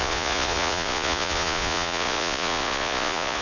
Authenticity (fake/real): fake